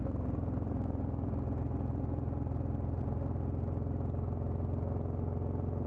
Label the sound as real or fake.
real